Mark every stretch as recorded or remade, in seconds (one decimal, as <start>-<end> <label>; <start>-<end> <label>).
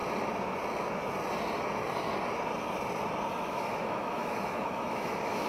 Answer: 0.0-3.3 recorded; 3.3-5.5 remade